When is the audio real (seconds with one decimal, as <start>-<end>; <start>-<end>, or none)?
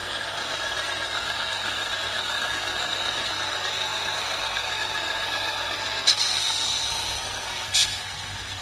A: none